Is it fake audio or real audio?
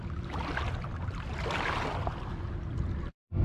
real